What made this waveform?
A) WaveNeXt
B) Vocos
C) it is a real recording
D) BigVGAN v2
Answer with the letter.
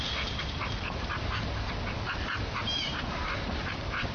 C